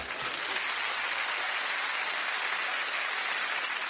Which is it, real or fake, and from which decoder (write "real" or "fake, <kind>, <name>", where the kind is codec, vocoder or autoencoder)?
real